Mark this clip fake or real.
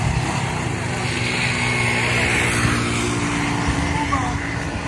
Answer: real